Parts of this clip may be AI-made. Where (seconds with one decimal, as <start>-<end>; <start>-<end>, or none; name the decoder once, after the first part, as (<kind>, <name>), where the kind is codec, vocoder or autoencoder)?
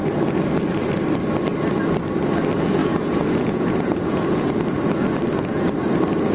2.8-4.5 (vocoder, Vocos)